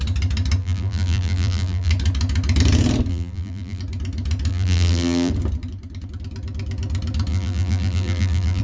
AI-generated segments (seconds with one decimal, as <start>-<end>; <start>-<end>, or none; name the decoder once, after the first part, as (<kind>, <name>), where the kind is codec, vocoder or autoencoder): 0.6-1.9 (vocoder, BigVGAN v2); 3.1-3.8; 4.5-5.3; 7.3-8.6